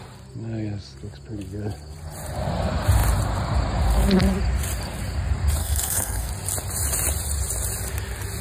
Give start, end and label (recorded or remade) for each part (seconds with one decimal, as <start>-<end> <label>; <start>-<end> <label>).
0.0-5.6 recorded; 5.6-6.3 remade; 6.3-8.4 recorded